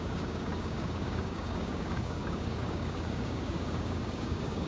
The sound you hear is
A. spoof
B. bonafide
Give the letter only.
A